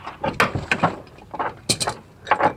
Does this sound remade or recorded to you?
recorded